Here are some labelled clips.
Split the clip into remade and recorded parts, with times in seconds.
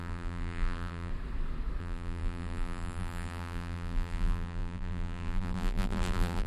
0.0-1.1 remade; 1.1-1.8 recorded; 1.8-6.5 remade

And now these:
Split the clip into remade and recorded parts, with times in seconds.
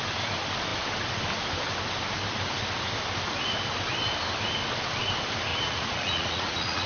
0.0-5.5 recorded; 5.5-6.9 remade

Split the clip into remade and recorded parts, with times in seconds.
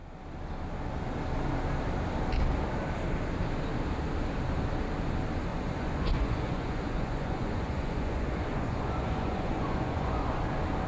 0.0-5.5 recorded; 5.5-10.4 remade; 10.4-10.9 recorded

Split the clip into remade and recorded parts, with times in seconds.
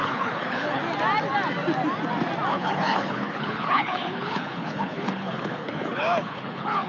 0.0-0.8 remade; 0.8-2.5 recorded; 2.5-6.9 remade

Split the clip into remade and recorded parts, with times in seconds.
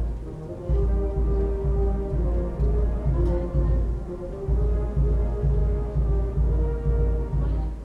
0.0-5.6 recorded; 5.6-6.3 remade; 6.3-7.8 recorded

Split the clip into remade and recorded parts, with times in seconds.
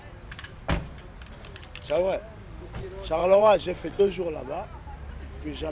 0.0-3.2 recorded; 3.2-4.0 remade; 4.0-5.7 recorded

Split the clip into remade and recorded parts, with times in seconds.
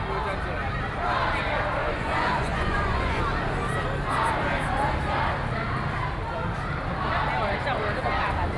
0.0-1.8 recorded; 1.8-3.2 remade; 3.2-8.6 recorded